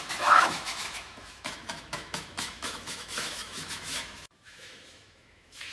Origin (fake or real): fake